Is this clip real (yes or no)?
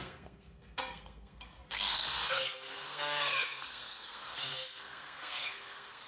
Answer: no